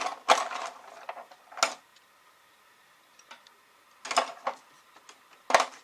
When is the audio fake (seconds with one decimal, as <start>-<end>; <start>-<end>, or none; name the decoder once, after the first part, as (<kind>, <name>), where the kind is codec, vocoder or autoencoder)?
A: none